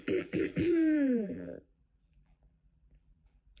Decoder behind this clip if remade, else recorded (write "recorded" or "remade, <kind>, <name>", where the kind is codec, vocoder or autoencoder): remade, vocoder, BigVGAN v2